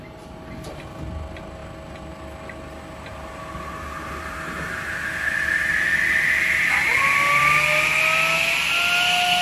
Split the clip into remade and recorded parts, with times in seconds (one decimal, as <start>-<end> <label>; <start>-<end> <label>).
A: 0.0-9.4 recorded